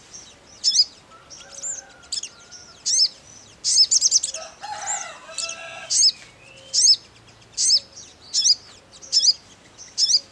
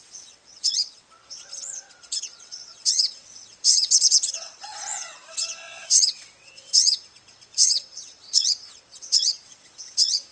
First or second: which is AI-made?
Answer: second